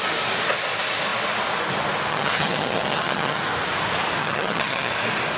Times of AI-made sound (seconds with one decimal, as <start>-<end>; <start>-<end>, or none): 2.1-3.4; 4.2-4.9